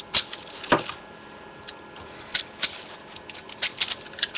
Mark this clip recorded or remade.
recorded